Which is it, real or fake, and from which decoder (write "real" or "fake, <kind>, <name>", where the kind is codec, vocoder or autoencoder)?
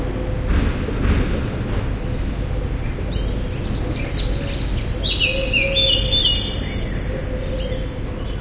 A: real